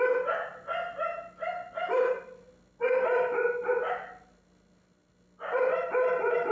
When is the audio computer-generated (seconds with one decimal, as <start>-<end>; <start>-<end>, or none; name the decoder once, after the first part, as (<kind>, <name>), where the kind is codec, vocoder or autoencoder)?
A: none